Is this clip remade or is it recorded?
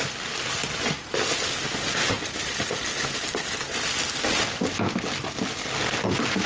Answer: recorded